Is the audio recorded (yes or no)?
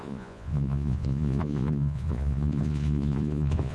no